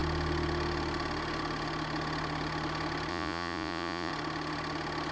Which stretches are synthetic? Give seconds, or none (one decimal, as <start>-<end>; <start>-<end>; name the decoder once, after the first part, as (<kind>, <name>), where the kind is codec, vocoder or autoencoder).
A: 3.1-4.1 (vocoder, Vocos)